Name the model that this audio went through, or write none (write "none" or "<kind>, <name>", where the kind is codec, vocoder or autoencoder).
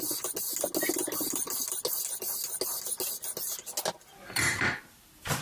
none